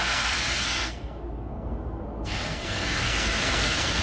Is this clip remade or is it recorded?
remade